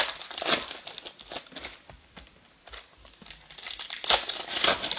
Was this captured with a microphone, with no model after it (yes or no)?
yes